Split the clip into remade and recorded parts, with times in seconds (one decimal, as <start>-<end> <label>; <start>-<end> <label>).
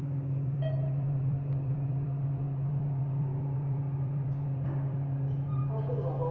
0.0-5.6 remade; 5.6-6.3 recorded